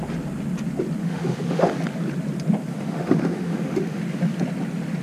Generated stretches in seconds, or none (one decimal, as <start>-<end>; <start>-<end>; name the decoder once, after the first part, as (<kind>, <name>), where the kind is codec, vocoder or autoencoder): 1.0-1.7 (autoencoder, DAC-VAE); 2.7-4.0